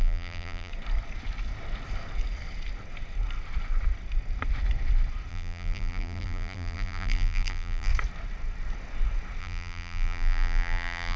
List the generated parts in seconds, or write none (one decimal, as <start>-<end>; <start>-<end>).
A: 0.0-0.7; 5.3-7.9; 9.4-11.2